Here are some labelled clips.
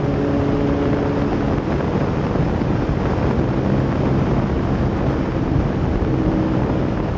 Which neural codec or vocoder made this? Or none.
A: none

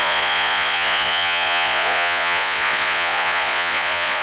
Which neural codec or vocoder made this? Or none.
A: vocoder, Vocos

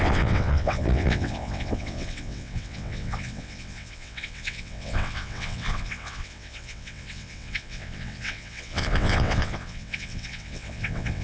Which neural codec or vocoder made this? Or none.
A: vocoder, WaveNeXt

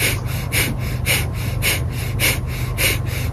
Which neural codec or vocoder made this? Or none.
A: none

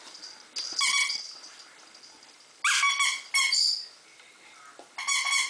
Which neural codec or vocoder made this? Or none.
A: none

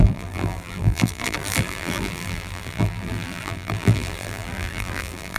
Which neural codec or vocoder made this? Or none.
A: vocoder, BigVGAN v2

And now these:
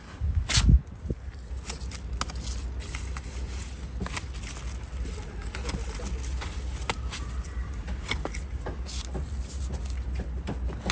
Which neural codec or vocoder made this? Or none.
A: none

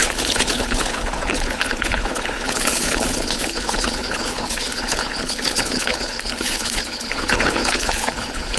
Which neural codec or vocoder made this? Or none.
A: codec, HILCodec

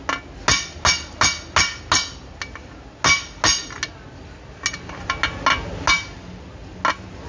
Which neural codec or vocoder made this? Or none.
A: none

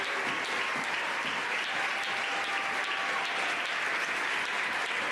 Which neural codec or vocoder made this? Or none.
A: none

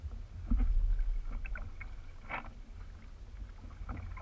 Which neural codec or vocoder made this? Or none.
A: none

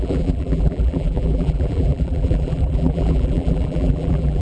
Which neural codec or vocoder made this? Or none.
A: vocoder, BigVGAN v2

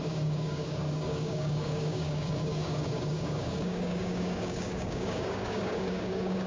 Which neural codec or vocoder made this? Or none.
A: codec, DAC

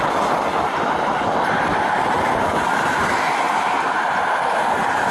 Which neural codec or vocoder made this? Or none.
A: none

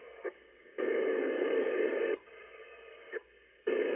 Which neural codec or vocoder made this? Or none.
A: codec, DAC